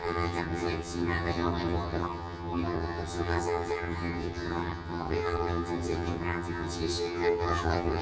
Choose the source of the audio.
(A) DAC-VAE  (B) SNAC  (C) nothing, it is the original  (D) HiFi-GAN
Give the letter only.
D